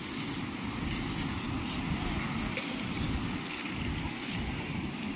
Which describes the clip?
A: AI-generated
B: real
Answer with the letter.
B